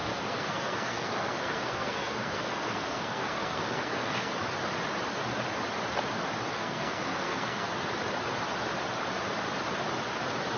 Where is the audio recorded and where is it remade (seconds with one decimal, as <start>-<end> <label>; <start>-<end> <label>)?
0.0-4.3 remade; 4.3-6.5 recorded; 6.5-7.7 remade; 7.7-10.6 recorded